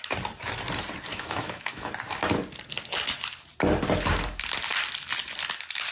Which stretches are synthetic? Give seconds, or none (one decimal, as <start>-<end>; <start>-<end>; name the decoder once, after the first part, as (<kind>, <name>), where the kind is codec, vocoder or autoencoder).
1.1-1.9 (autoencoder, DAC-VAE)